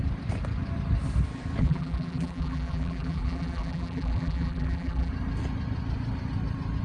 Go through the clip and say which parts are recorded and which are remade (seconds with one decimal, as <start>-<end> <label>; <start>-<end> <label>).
0.0-1.6 recorded; 1.6-5.1 remade; 5.1-6.8 recorded